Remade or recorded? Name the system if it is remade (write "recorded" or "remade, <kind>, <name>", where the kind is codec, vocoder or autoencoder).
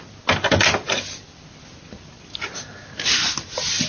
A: recorded